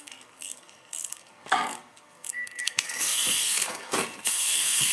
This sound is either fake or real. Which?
fake